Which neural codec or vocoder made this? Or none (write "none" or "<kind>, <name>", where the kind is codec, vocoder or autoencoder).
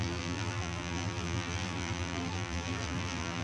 vocoder, BigVGAN v2